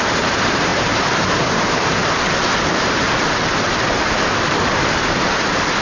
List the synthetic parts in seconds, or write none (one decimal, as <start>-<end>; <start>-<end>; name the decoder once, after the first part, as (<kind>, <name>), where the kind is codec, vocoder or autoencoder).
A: 0.0-2.0 (vocoder, BigVGAN v2)